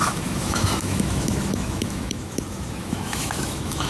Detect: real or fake fake